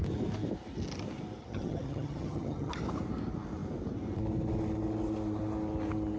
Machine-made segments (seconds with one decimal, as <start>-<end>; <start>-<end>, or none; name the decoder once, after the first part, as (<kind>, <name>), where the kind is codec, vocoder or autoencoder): 1.4-2.7 (vocoder, HiFi-GAN)